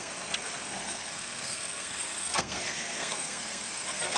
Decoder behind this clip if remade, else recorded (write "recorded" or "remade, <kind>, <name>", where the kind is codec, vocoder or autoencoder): remade, codec, SNAC